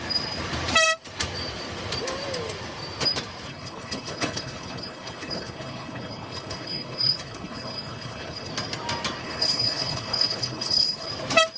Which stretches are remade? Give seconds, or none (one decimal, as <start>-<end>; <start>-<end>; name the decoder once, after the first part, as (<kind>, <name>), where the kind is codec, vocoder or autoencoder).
3.5-8.5 (codec, HILCodec); 9.2-11.1